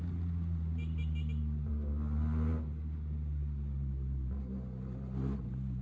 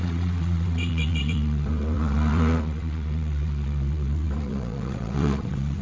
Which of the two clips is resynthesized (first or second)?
second